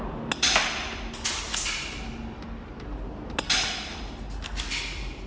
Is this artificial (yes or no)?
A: no